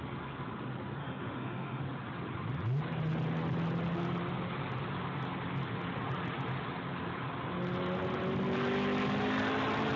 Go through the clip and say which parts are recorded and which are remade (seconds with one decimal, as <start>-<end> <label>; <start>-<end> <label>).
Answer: 0.0-1.0 recorded; 1.0-1.8 remade; 1.8-10.0 recorded